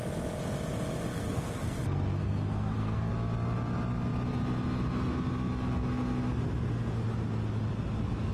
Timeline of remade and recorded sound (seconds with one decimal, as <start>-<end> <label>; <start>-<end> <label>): 0.0-1.1 recorded; 1.1-3.1 remade; 3.1-8.3 recorded